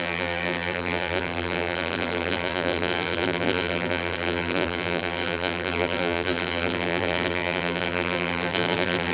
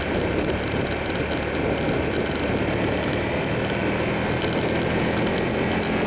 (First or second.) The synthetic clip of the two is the first